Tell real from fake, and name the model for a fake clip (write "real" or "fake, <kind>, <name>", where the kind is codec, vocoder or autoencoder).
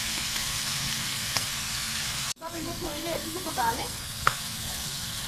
fake, codec, SNAC